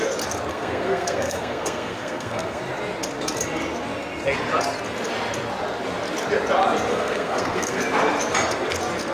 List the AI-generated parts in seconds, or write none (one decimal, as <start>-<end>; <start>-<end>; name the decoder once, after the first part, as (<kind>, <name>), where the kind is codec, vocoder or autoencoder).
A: 0.5-2.6 (codec, SNAC); 6.9-7.8